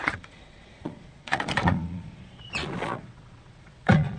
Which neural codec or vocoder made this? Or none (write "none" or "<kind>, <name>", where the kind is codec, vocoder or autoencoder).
vocoder, Vocos